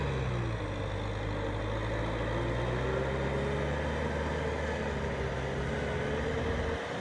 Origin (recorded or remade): recorded